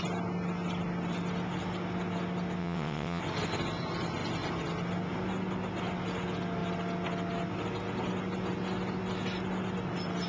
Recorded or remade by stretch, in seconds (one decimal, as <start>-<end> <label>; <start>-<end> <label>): 0.0-2.6 recorded; 2.6-3.2 remade; 3.2-10.3 recorded